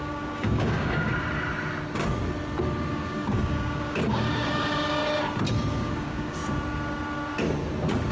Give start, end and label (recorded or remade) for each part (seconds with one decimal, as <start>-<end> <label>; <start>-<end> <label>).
0.0-1.1 remade; 1.1-2.9 recorded; 2.9-5.0 remade; 5.0-5.7 recorded; 5.7-6.4 remade; 6.4-8.1 recorded

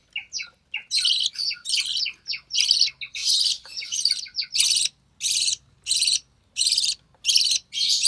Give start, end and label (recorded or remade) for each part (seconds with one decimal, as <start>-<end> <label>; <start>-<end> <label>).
0.0-8.1 recorded

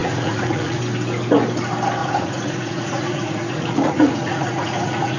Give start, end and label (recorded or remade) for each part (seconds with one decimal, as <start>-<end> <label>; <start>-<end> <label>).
0.0-0.8 remade; 0.8-2.0 recorded; 2.0-5.2 remade

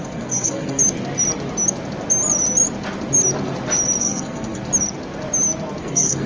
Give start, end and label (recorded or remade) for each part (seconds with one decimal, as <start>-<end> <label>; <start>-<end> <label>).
0.0-0.8 remade; 0.8-4.0 recorded; 4.0-4.6 remade; 4.6-5.8 recorded; 5.8-6.3 remade

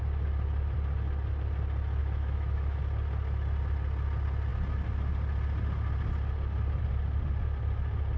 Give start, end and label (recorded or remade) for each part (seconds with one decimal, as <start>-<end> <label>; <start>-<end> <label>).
0.0-2.0 recorded; 2.0-2.8 remade; 2.8-8.2 recorded

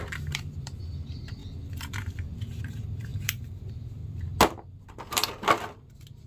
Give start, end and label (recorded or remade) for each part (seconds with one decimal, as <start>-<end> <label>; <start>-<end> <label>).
0.0-1.4 remade; 1.4-2.6 recorded; 2.6-4.0 remade; 4.0-4.7 recorded; 4.7-5.2 remade; 5.2-6.3 recorded

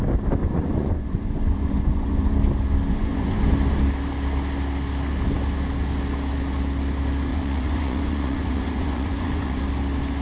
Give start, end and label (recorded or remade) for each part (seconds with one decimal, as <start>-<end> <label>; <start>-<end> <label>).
0.0-0.4 recorded; 0.4-2.3 remade; 2.3-2.9 recorded; 2.9-3.5 remade; 3.5-7.3 recorded; 7.3-9.6 remade; 9.6-10.2 recorded

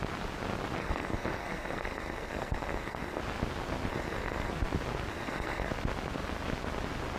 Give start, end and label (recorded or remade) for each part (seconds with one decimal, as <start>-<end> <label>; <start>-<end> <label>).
0.0-0.8 recorded; 0.8-3.2 remade; 3.2-3.9 recorded; 3.9-4.5 remade; 4.5-5.1 recorded; 5.1-5.7 remade; 5.7-7.2 recorded